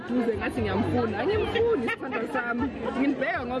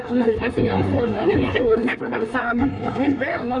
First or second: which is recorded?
first